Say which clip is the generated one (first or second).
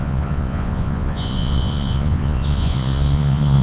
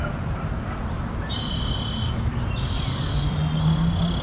first